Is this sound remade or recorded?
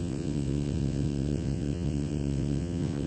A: remade